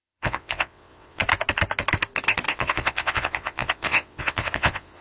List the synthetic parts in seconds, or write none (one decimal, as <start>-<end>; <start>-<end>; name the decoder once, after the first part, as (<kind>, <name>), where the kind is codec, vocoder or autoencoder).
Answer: 0.0-1.2 (vocoder, WaveNeXt); 2.5-5.0